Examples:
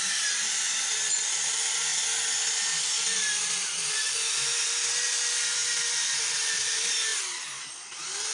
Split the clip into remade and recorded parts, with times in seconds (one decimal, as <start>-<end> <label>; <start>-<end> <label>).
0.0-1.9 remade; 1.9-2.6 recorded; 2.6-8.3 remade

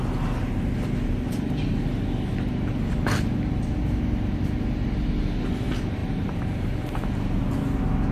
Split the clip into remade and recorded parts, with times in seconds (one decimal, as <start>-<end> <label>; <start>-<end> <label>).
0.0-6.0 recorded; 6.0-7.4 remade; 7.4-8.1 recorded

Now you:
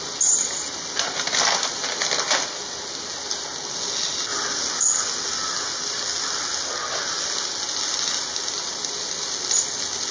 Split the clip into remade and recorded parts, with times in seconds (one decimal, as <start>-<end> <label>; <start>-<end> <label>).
0.0-10.1 recorded

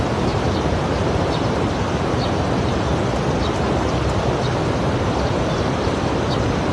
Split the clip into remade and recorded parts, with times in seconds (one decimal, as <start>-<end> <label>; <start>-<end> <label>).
0.0-2.9 remade; 2.9-5.3 recorded; 5.3-6.7 remade